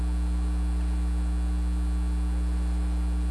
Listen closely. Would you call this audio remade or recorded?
recorded